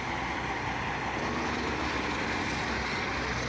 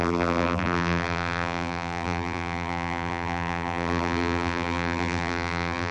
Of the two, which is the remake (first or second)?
second